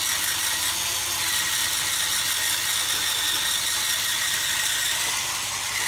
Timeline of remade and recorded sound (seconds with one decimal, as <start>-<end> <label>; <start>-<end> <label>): 0.0-5.9 recorded